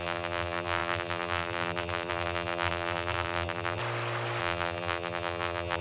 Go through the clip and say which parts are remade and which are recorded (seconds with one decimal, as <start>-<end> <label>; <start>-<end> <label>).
0.0-3.8 remade; 3.8-4.4 recorded; 4.4-5.8 remade